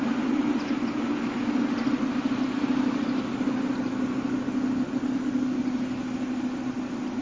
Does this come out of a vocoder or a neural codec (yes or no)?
no